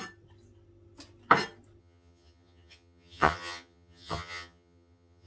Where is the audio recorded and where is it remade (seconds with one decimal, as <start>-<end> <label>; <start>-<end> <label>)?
0.0-1.8 recorded; 1.8-5.3 remade